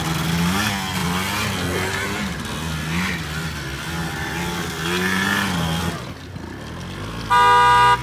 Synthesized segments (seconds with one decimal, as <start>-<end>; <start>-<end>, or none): none